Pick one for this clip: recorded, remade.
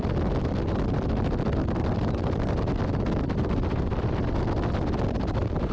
recorded